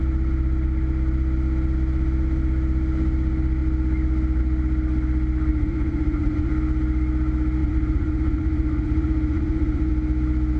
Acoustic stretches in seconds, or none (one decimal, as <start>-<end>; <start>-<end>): 0.0-5.5; 6.5-7.6; 9.9-10.6